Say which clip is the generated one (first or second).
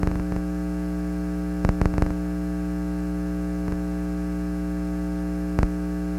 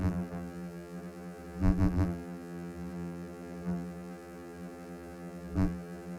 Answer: second